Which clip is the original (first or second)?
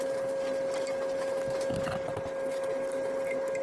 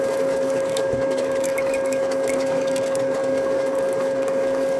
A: first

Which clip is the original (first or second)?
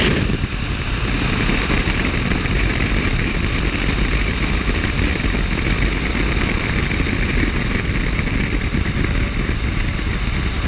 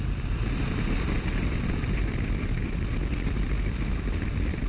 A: second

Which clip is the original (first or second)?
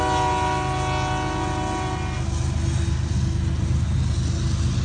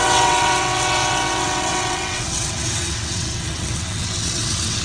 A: first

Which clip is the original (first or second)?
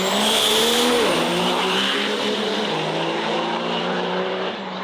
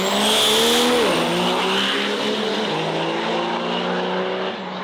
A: second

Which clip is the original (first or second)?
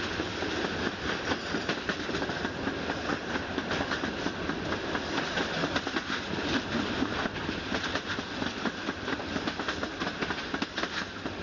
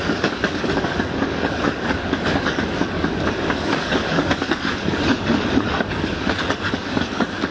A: first